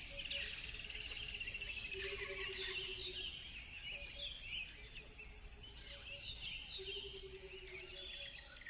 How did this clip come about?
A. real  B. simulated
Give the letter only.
A